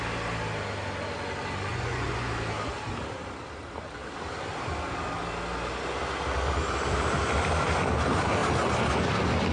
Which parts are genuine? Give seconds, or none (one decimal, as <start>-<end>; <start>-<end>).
0.0-1.7; 2.3-9.5